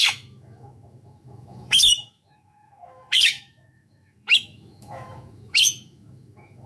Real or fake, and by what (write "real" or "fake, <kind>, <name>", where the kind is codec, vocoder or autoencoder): fake, autoencoder, DAC-VAE